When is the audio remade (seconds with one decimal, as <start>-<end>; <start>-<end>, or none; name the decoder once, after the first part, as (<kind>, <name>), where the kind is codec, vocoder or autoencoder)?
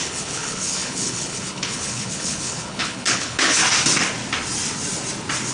0.0-3.6 (codec, HILCodec)